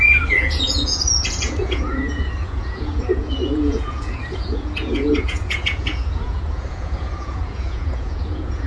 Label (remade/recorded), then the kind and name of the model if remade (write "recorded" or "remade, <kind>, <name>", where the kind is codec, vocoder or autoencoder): remade, vocoder, Vocos